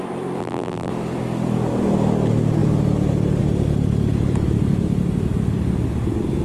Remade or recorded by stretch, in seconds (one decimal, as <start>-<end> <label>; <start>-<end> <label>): 0.0-0.4 recorded; 0.4-0.9 remade; 0.9-6.4 recorded